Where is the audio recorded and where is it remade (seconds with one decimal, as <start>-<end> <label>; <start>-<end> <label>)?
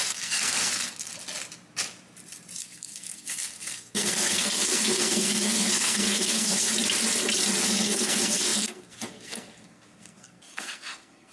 0.0-1.1 remade; 1.1-2.6 recorded; 2.6-6.7 remade; 6.7-7.6 recorded; 7.6-11.3 remade